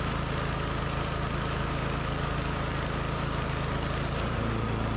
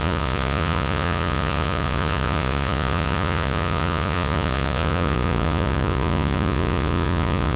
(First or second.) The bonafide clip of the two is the first